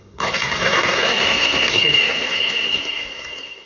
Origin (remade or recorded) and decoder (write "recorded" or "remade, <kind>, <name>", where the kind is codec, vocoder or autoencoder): remade, codec, SNAC